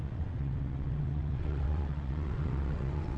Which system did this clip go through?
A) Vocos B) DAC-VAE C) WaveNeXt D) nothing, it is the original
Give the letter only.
C